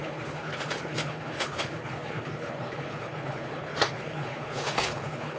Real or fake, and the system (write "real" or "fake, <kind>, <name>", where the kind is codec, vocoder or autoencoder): fake, codec, HILCodec